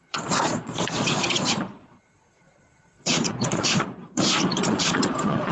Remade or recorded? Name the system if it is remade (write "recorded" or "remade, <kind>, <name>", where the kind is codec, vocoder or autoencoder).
remade, vocoder, Vocos